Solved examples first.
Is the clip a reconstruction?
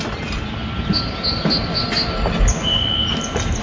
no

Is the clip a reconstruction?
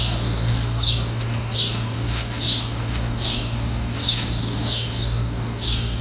yes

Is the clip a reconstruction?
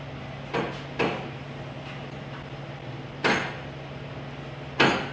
no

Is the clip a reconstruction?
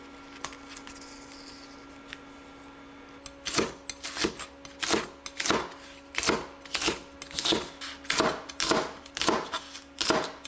no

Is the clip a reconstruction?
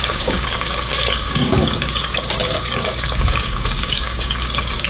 yes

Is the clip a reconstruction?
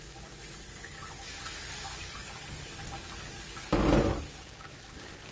yes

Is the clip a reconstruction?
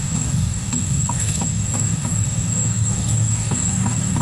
yes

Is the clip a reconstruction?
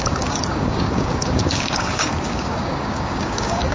yes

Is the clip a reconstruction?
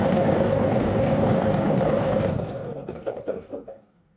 yes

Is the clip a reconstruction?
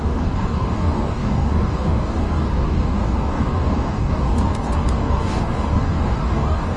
yes